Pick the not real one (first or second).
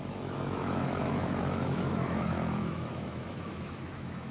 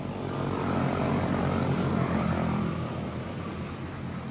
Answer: first